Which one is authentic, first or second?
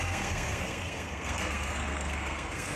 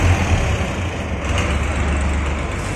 second